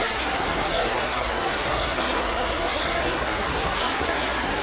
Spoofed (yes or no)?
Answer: yes